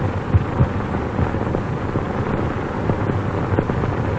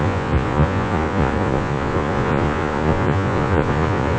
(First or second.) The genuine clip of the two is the first